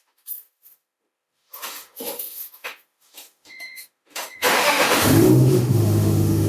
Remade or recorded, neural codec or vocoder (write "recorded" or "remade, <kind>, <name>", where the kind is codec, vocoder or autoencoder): remade, autoencoder, DAC-VAE